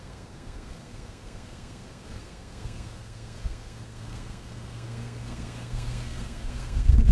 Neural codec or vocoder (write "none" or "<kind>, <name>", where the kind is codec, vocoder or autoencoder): codec, SNAC